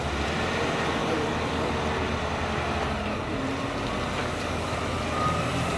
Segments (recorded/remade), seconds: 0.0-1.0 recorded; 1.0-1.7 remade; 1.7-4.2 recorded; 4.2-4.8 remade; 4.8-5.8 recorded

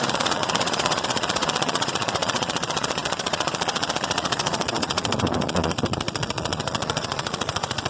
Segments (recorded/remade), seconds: 0.0-7.9 remade

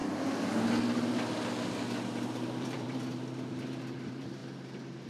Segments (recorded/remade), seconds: 0.0-0.9 recorded; 0.9-4.4 remade; 4.4-5.1 recorded

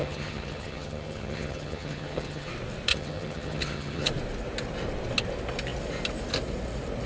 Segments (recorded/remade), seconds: 0.0-2.5 remade; 2.5-2.9 recorded; 2.9-4.1 remade; 4.1-7.1 recorded

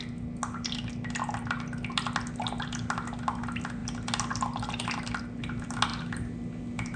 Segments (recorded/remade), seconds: 0.0-7.0 recorded

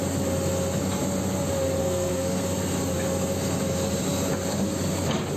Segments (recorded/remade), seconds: 0.0-1.8 recorded; 1.8-2.4 remade; 2.4-5.4 recorded